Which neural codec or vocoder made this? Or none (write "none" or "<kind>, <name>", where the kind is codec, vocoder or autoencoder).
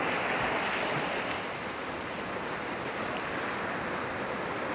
none